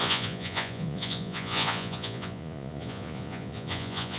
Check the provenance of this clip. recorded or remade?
remade